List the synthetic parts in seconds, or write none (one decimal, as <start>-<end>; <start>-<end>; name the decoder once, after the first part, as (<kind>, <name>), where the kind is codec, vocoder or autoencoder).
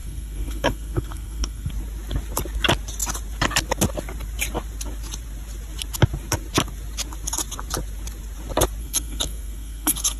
0.0-1.7 (codec, SNAC); 8.8-10.2